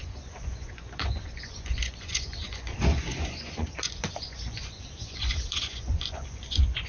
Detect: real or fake fake